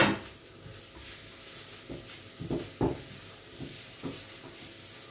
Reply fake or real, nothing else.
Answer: real